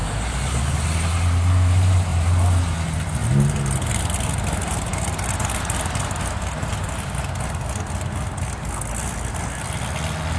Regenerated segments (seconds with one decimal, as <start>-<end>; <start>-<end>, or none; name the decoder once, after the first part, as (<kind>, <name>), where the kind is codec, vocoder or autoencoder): none